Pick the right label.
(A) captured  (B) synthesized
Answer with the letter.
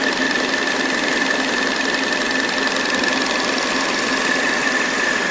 A